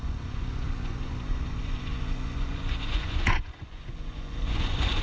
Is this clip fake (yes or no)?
yes